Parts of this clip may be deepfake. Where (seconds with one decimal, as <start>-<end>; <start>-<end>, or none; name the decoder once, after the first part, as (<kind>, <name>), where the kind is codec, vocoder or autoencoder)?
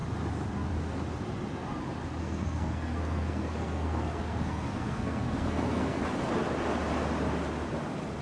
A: 2.2-6.0 (codec, SNAC)